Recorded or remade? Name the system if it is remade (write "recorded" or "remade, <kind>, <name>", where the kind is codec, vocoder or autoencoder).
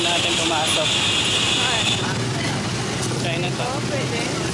recorded